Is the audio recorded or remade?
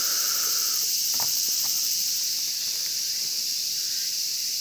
remade